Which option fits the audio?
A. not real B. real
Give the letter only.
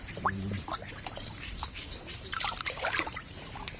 A